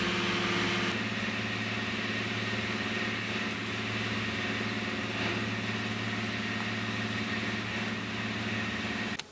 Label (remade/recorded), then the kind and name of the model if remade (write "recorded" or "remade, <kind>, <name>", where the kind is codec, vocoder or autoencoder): recorded